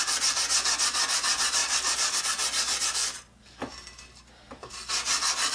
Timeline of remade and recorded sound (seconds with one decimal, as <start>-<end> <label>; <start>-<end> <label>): 0.0-1.6 recorded; 1.6-2.2 remade; 2.2-5.5 recorded